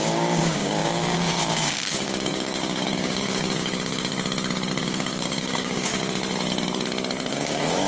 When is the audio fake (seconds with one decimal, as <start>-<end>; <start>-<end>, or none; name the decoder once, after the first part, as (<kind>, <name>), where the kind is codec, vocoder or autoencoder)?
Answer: 0.0-4.1 (codec, DAC); 4.8-5.9; 7.3-7.9